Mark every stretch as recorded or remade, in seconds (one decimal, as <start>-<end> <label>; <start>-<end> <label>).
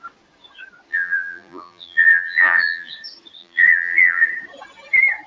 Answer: 0.0-0.9 recorded; 0.9-2.9 remade; 2.9-3.4 recorded; 3.4-4.3 remade; 4.3-5.3 recorded